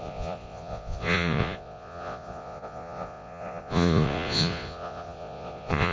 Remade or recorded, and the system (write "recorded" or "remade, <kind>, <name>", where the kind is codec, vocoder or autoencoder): remade, vocoder, Vocos